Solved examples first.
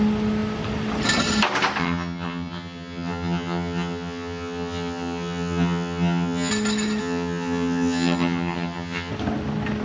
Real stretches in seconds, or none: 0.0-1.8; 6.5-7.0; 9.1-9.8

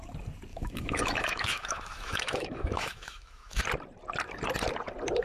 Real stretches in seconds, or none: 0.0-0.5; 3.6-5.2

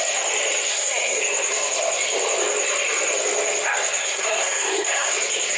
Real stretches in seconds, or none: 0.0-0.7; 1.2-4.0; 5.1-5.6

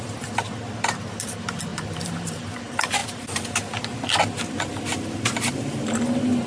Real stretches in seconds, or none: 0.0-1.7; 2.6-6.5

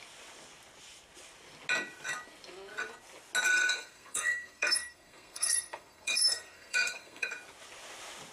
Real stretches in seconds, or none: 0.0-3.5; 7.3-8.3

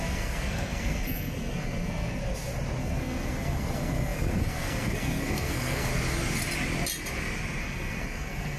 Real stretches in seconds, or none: 2.2-2.8; 5.9-7.6